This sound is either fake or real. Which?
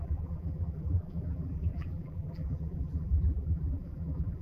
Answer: fake